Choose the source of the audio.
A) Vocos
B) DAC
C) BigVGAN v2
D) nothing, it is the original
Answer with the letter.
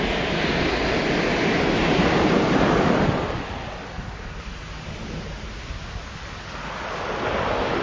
D